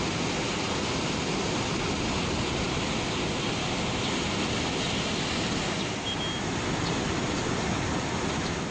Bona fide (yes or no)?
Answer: yes